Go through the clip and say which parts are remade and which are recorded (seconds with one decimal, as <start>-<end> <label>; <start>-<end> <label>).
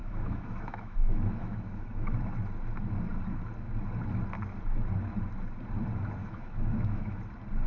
0.0-2.2 remade; 2.2-6.2 recorded; 6.2-7.2 remade; 7.2-7.7 recorded